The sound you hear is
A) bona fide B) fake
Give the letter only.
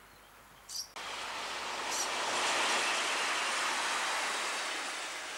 A